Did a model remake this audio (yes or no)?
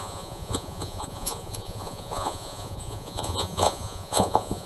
yes